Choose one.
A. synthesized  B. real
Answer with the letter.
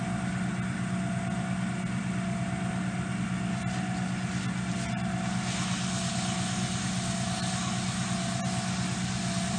B